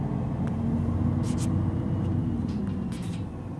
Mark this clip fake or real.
real